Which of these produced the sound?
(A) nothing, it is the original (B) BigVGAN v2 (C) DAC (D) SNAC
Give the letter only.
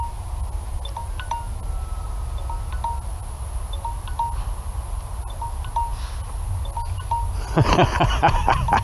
A